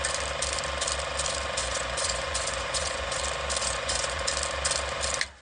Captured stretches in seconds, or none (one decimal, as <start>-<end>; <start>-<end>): 0.0-1.6; 3.2-3.6; 4.3-5.4